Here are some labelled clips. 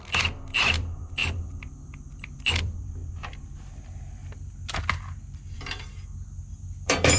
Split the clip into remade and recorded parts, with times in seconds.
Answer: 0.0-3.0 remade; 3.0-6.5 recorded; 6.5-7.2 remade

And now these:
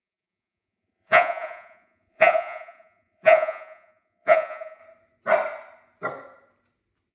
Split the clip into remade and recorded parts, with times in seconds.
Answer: 0.0-4.8 remade; 4.8-7.1 recorded

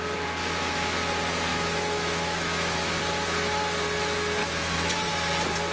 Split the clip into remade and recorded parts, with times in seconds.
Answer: 0.0-0.4 recorded; 0.4-1.1 remade; 1.1-1.5 recorded; 1.5-3.0 remade; 3.0-4.4 recorded; 4.4-5.1 remade; 5.1-5.7 recorded

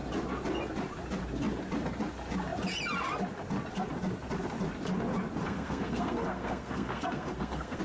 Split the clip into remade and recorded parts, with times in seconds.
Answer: 0.0-5.4 recorded; 5.4-7.8 remade

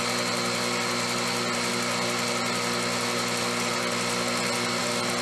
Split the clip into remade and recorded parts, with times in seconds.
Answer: 0.0-5.2 recorded